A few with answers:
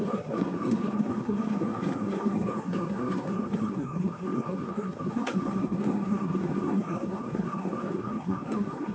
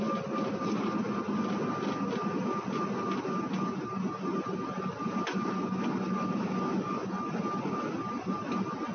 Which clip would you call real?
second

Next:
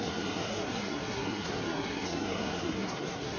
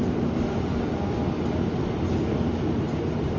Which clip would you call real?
second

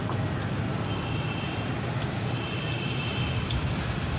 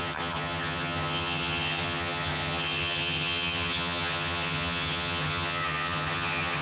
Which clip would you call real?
first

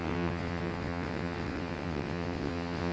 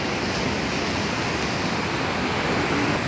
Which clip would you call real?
second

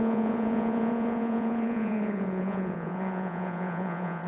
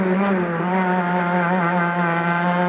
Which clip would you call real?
second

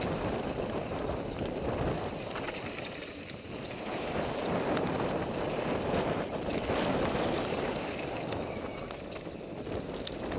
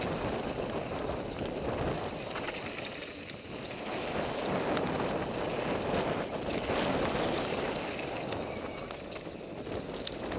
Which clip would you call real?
second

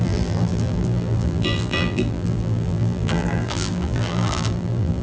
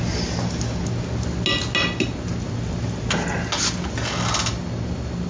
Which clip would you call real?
second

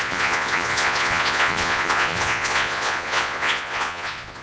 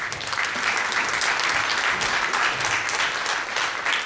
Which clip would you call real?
second